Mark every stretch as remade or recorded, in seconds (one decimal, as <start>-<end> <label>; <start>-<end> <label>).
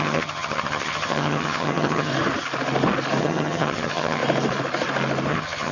0.0-2.1 remade; 2.1-3.2 recorded; 3.2-4.2 remade; 4.2-5.3 recorded; 5.3-5.7 remade